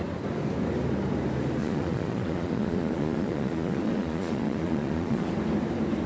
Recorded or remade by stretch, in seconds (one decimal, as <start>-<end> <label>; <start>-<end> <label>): 0.0-1.6 recorded; 1.6-5.3 remade; 5.3-6.1 recorded

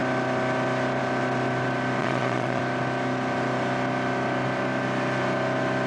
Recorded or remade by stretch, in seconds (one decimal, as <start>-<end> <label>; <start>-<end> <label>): 0.0-2.0 recorded; 2.0-2.6 remade; 2.6-5.9 recorded